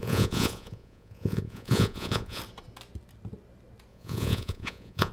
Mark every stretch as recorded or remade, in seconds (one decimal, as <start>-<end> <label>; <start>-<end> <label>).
0.0-2.4 remade; 2.4-3.9 recorded; 3.9-5.1 remade